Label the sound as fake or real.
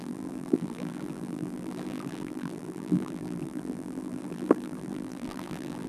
fake